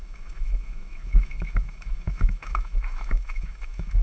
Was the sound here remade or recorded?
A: remade